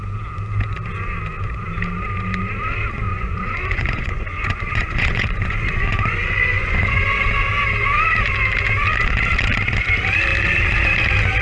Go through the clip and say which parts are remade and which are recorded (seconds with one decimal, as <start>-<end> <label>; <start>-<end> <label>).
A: 0.0-3.1 recorded; 3.1-7.3 remade; 7.3-11.4 recorded